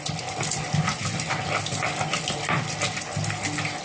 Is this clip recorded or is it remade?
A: recorded